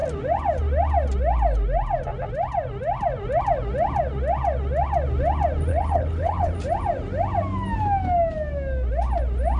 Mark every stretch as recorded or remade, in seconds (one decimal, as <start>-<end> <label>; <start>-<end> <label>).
0.0-5.7 recorded; 5.7-6.5 remade; 6.5-9.6 recorded